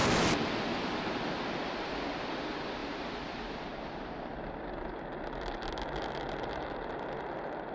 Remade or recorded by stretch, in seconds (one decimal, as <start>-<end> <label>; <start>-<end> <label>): 0.0-2.8 recorded; 2.8-4.1 remade; 4.1-7.7 recorded